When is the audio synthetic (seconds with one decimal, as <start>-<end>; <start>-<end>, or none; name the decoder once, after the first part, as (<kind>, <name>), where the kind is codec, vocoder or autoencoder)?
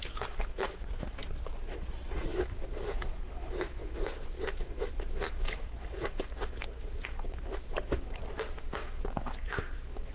0.0-1.2 (autoencoder, DAC-VAE); 1.7-8.2; 8.7-10.1